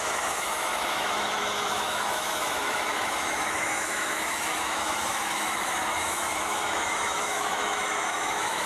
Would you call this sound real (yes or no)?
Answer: no